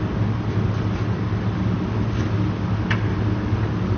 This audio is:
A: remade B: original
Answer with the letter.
B